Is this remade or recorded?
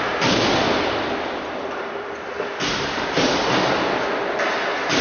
recorded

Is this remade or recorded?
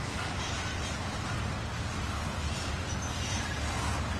recorded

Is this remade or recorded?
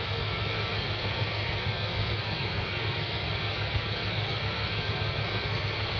remade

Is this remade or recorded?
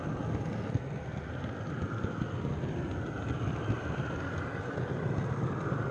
recorded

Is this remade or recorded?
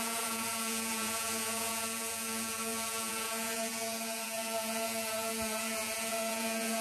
remade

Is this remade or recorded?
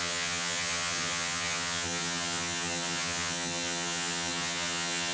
remade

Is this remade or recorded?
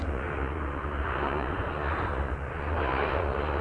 remade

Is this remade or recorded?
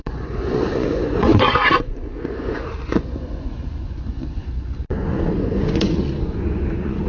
remade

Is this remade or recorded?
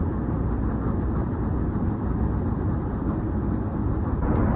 recorded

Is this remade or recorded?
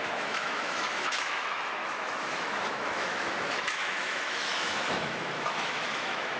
remade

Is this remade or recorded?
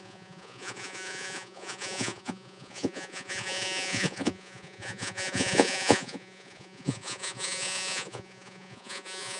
remade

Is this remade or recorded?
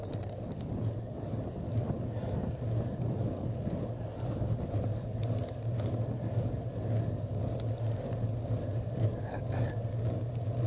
recorded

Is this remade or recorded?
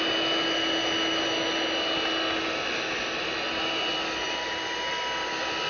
recorded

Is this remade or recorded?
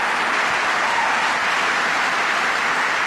recorded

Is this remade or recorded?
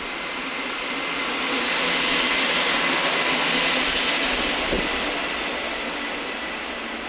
recorded